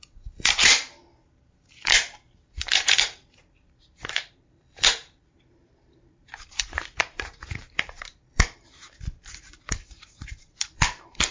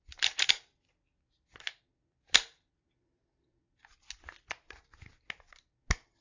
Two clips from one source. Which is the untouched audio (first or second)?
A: second